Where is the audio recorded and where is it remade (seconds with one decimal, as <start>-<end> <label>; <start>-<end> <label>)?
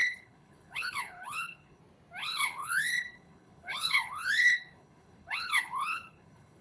0.0-1.8 remade; 1.8-2.2 recorded; 2.2-6.6 remade